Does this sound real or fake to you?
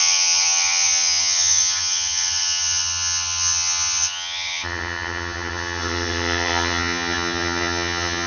fake